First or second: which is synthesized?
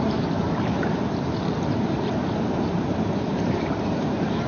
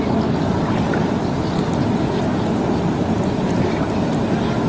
first